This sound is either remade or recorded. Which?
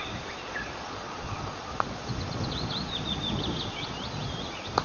remade